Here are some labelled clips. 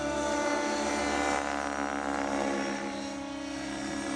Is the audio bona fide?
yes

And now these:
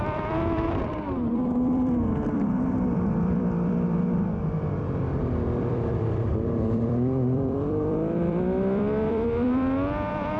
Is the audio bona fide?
no